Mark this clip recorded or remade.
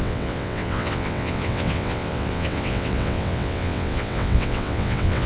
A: remade